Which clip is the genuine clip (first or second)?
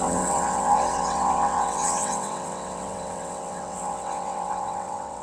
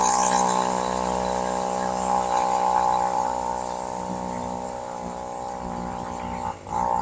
second